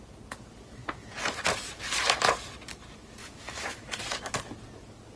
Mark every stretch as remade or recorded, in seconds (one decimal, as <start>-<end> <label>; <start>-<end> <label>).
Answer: 0.0-3.2 recorded; 3.2-4.0 remade; 4.0-5.2 recorded